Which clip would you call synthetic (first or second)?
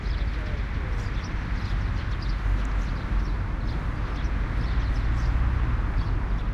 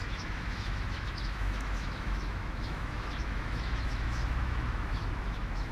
second